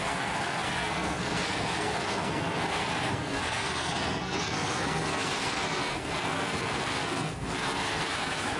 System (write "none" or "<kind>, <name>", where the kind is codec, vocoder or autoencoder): codec, SNAC